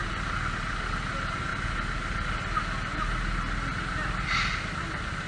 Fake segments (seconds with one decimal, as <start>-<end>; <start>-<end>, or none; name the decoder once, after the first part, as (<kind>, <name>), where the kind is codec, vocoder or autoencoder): none